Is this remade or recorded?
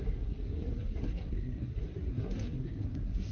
remade